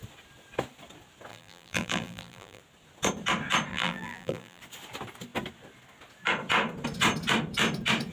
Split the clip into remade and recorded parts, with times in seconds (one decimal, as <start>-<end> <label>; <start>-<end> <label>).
0.0-1.3 recorded; 1.3-2.6 remade; 2.6-3.7 recorded; 3.7-4.6 remade; 4.6-8.1 recorded